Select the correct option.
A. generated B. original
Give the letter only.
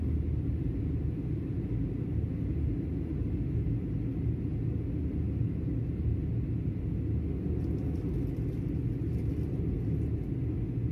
B